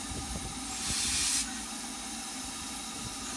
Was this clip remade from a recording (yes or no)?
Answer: no